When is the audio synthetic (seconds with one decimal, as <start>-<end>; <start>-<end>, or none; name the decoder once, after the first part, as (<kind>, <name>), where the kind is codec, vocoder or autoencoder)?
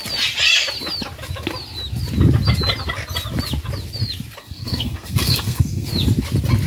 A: 4.4-5.9 (codec, SNAC)